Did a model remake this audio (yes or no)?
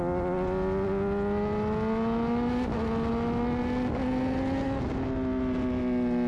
no